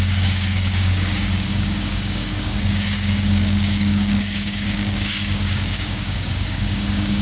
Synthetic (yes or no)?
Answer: yes